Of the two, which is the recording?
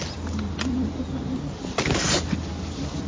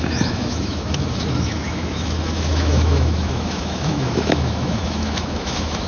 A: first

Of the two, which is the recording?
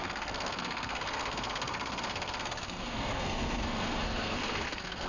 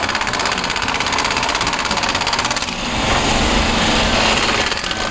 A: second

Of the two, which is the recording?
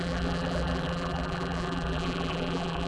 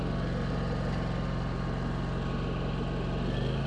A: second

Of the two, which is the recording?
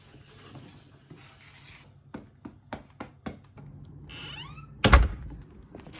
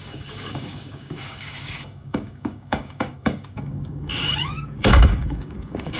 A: first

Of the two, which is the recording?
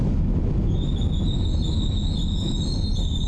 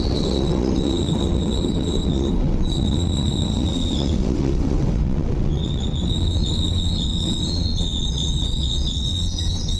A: first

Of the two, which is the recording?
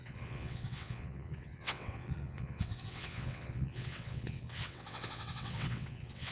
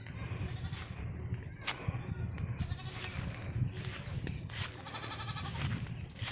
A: second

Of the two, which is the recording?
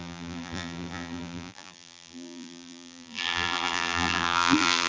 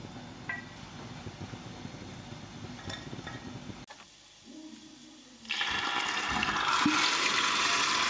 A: second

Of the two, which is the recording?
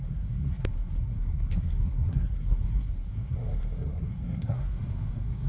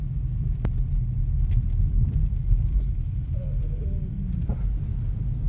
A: second